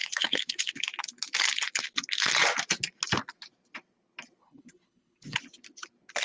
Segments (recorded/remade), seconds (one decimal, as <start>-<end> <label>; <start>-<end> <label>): 0.0-0.7 remade; 0.7-4.4 recorded; 4.4-5.4 remade; 5.4-6.2 recorded